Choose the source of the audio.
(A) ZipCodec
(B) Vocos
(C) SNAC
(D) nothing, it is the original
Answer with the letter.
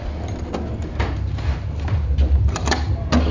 D